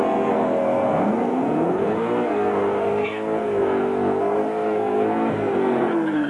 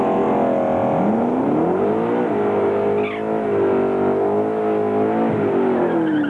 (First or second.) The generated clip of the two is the first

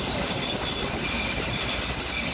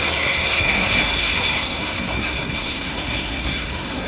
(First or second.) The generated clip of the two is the second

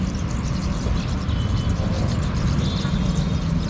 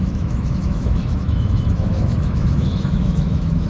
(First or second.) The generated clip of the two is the second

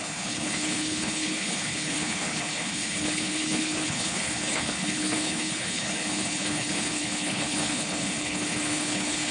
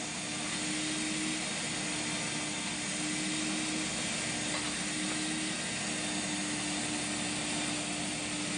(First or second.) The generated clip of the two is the first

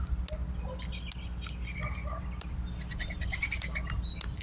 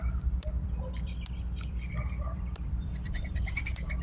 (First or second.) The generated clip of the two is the second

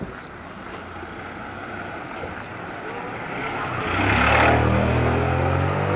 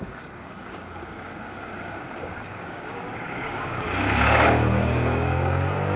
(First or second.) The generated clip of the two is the second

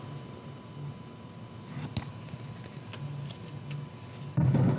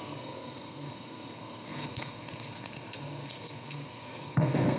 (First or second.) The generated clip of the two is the second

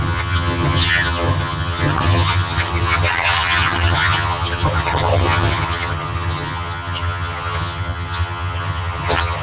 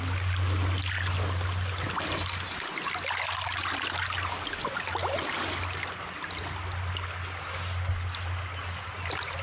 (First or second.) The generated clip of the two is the first